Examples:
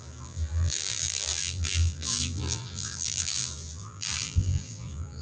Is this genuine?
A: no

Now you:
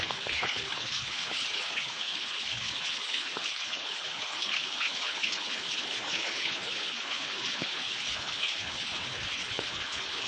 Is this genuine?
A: no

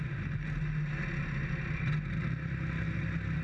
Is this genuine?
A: yes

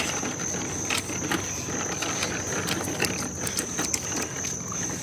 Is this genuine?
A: yes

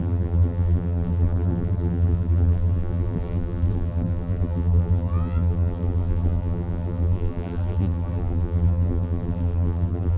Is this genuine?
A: no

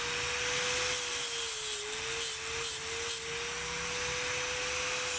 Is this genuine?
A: yes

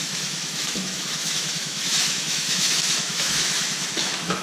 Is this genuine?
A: no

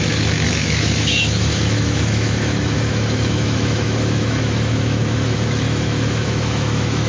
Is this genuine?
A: no